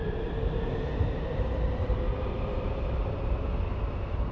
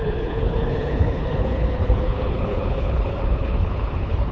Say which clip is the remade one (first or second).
second